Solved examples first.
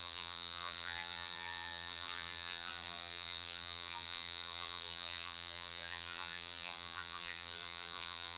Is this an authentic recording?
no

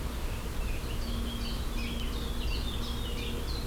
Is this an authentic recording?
yes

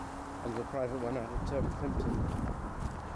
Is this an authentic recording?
yes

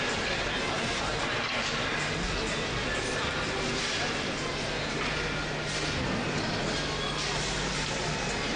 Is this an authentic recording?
yes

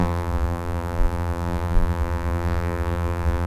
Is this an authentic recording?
no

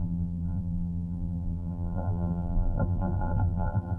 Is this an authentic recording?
no